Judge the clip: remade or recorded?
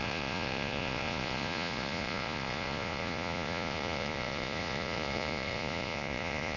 remade